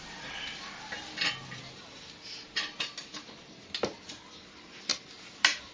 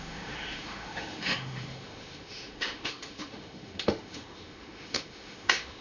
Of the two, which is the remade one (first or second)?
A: second